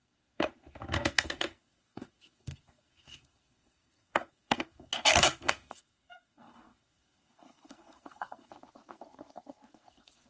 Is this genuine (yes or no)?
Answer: no